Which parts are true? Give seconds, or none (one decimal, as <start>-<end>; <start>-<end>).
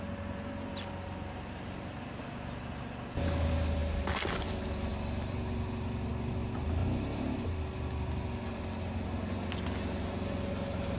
0.0-11.0